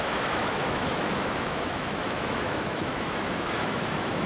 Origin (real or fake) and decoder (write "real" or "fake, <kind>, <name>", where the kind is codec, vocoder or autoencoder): fake, autoencoder, DAC-VAE